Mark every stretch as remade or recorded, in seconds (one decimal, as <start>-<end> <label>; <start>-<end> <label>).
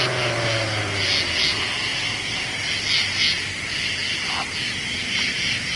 0.0-1.9 recorded; 1.9-2.7 remade; 2.7-5.8 recorded